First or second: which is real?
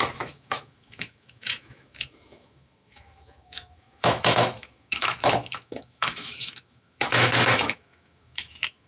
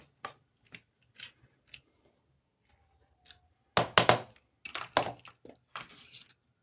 second